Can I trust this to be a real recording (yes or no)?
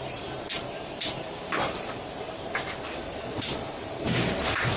no